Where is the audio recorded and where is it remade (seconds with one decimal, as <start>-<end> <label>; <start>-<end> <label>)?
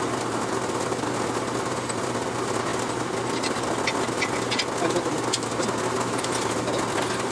0.0-7.3 recorded